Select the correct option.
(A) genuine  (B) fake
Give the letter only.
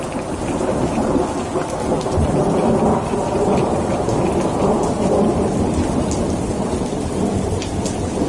B